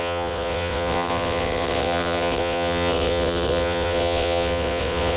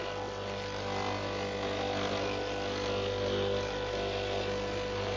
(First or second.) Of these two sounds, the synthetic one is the first